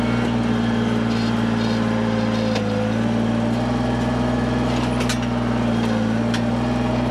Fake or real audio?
real